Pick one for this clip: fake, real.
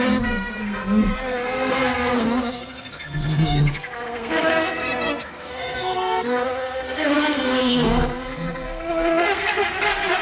fake